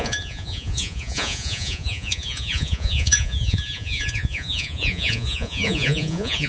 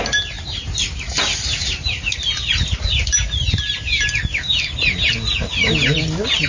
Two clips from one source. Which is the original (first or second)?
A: second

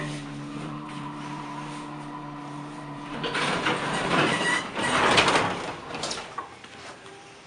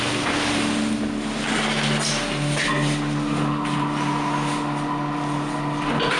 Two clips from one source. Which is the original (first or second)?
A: second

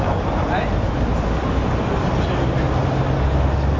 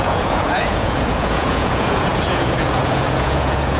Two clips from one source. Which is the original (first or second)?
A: first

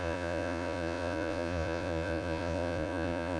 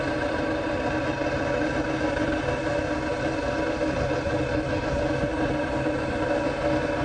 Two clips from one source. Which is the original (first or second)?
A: second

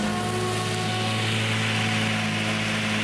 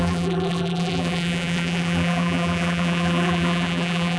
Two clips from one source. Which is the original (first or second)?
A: first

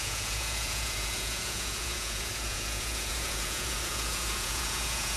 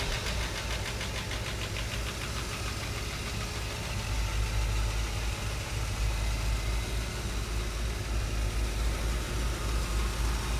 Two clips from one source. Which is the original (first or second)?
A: second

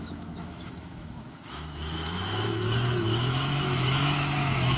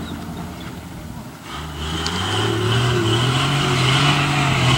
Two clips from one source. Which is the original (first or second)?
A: second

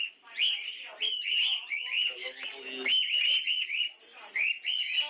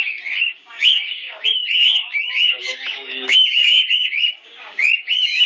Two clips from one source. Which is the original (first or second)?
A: first